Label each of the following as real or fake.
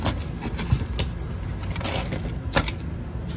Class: real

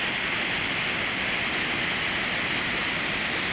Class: real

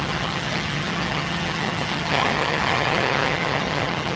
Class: fake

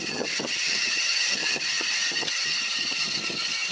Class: fake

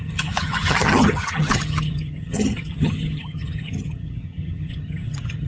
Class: fake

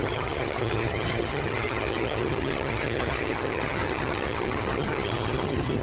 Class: fake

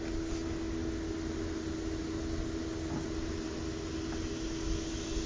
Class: real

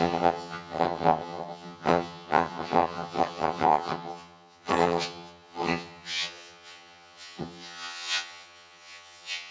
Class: fake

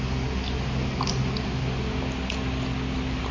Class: real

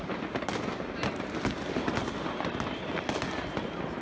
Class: real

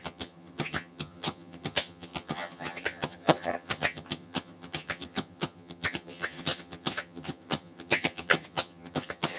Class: fake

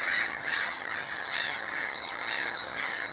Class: fake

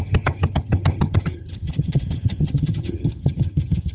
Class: fake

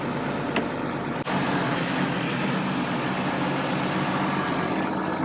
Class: real